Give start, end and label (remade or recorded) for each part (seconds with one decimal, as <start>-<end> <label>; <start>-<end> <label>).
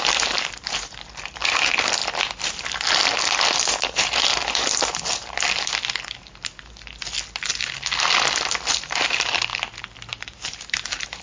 0.0-2.0 remade; 2.0-3.6 recorded; 3.6-4.7 remade; 4.7-8.7 recorded; 8.7-9.5 remade; 9.5-10.1 recorded; 10.1-11.2 remade